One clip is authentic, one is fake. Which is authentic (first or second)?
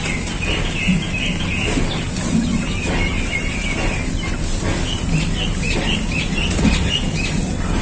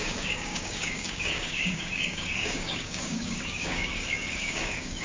first